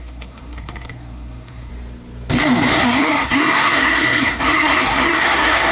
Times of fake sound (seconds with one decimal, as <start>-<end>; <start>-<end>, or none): 0.0-1.7; 2.7-5.7